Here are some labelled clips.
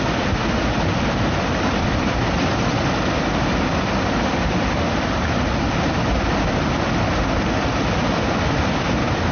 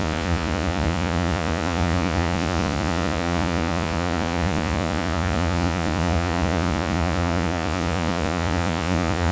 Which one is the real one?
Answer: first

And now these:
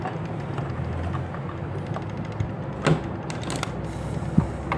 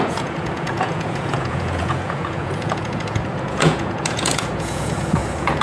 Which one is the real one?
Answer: first